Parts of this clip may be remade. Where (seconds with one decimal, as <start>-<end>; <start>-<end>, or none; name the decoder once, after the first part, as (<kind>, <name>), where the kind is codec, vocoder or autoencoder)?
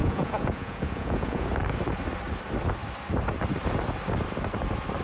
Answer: 0.0-1.5 (vocoder, Vocos)